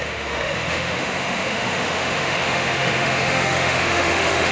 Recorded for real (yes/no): no